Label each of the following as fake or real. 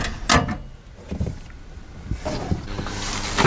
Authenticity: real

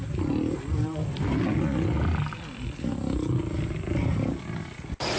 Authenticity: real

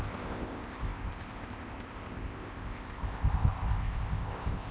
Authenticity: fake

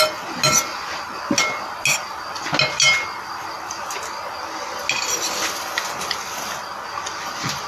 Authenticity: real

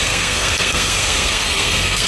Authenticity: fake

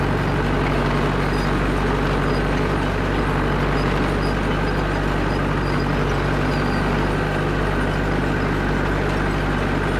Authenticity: real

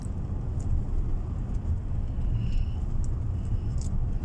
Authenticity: real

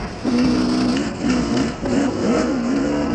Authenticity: fake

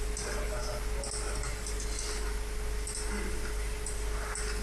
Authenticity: real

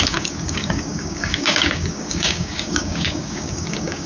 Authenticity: fake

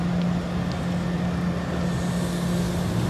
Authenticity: real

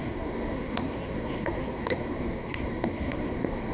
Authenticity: fake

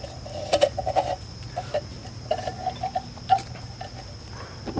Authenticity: real